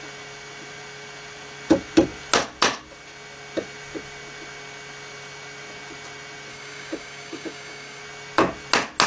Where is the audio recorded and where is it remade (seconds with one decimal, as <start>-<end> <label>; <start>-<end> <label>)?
0.0-6.5 recorded; 6.5-8.0 remade; 8.0-9.1 recorded